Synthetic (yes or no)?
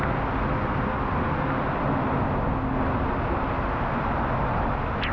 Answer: no